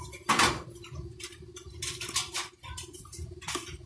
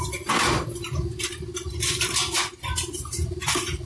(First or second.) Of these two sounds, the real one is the second